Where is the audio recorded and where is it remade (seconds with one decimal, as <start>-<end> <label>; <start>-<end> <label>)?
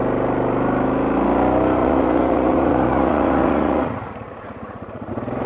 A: 0.0-1.8 recorded; 1.8-5.1 remade; 5.1-5.5 recorded